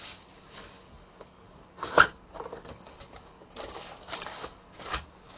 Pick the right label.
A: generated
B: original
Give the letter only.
A